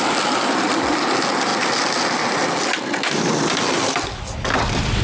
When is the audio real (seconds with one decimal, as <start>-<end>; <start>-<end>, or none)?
0.0-5.0